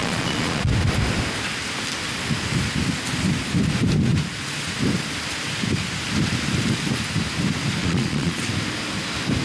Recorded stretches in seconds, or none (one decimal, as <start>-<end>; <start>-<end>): 0.7-7.8; 8.4-9.4